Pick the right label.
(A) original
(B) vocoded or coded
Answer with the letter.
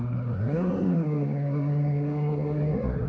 B